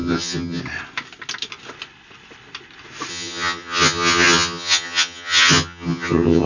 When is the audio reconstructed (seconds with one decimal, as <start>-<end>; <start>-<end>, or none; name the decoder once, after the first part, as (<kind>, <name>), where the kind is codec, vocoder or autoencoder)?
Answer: 0.0-0.6 (vocoder, HiFi-GAN); 3.1-6.5